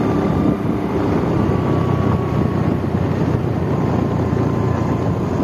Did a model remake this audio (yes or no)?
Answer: no